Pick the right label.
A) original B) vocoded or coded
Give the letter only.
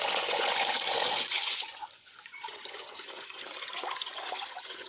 B